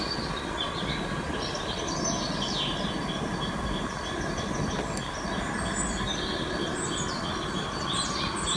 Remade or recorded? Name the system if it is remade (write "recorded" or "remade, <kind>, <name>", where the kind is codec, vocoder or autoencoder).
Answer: recorded